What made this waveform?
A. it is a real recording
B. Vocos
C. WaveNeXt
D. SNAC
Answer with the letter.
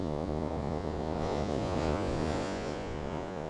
B